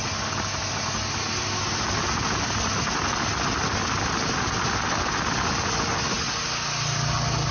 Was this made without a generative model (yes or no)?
yes